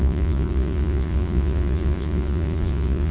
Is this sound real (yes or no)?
no